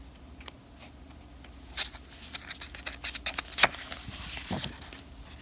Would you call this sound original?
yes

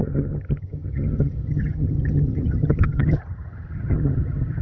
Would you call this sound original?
no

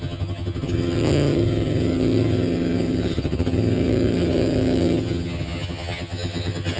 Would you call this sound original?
no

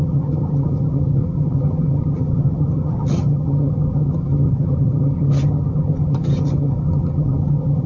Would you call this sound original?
no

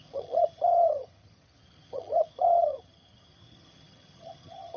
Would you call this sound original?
no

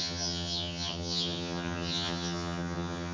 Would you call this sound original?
no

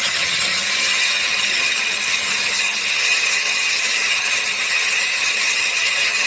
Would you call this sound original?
no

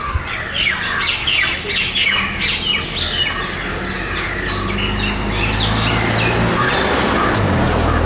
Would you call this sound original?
yes